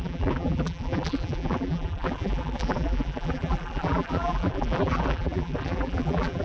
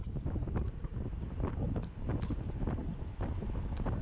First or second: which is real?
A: second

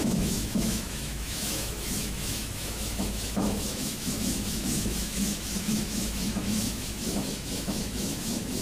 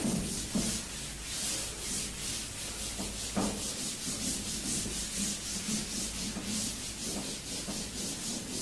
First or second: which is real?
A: second